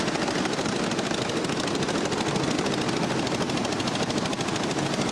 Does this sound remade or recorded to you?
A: recorded